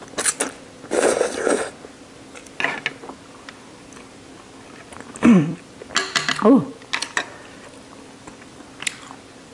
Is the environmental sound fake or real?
real